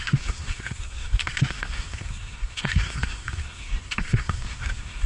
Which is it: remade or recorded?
remade